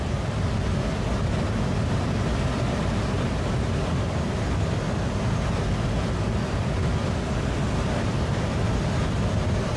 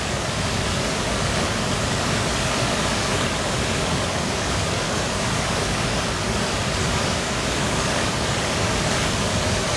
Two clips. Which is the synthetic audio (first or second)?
second